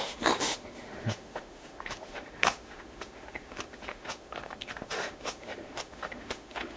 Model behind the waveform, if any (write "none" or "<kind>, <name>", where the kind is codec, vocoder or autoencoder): autoencoder, DAC-VAE